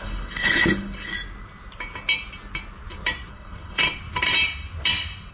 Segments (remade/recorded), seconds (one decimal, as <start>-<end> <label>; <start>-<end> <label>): 0.0-1.1 remade; 1.1-3.3 recorded; 3.3-3.8 remade; 3.8-5.3 recorded